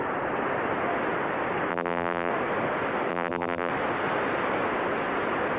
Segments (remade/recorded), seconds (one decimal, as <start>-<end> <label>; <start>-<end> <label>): 0.0-1.7 recorded; 1.7-2.3 remade; 2.3-3.1 recorded; 3.1-3.7 remade; 3.7-5.6 recorded